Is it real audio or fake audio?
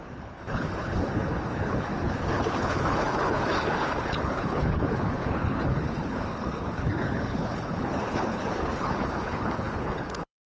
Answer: fake